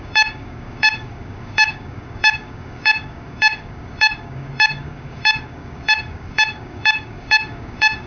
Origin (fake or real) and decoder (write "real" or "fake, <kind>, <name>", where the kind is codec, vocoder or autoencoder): fake, codec, DAC